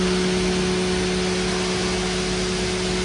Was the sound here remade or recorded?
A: recorded